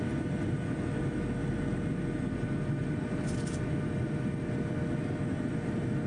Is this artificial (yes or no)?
no